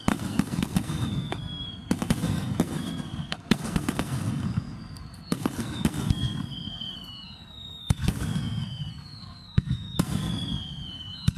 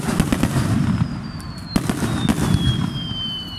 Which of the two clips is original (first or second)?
second